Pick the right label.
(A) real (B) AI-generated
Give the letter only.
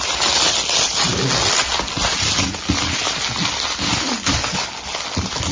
A